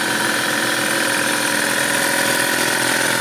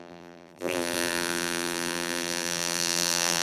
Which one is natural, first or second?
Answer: first